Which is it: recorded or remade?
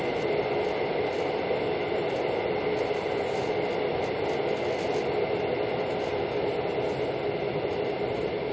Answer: recorded